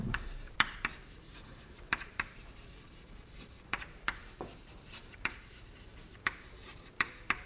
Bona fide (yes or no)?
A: no